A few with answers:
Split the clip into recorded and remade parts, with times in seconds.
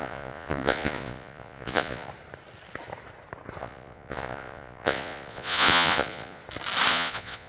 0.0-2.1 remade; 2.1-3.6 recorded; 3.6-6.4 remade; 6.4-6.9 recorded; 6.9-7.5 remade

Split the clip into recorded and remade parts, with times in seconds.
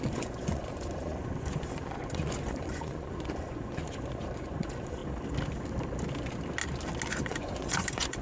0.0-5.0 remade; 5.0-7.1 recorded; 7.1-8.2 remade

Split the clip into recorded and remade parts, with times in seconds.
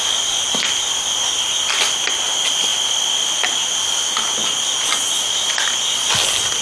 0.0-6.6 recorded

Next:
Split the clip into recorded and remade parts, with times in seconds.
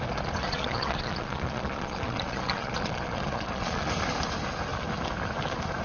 0.0-0.4 recorded; 0.4-3.9 remade; 3.9-5.8 recorded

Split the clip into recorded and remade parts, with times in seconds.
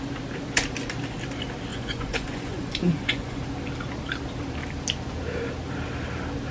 0.0-1.7 recorded; 1.7-3.4 remade; 3.4-6.5 recorded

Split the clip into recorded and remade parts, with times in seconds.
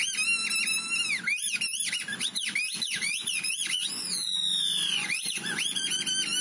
0.0-3.0 recorded; 3.0-6.0 remade; 6.0-6.4 recorded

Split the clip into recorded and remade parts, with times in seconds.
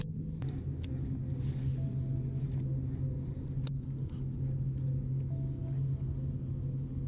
0.0-7.1 recorded